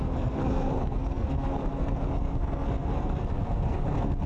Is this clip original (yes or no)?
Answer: no